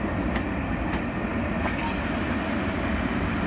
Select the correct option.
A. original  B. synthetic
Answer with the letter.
A